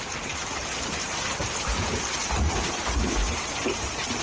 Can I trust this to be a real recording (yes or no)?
yes